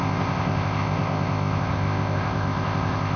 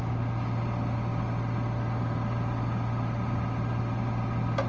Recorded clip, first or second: second